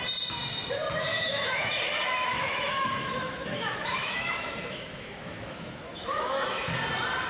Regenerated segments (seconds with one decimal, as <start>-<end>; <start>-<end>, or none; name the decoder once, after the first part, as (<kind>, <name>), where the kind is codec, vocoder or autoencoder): 1.1-1.7 (autoencoder, DAC-VAE); 2.3-6.7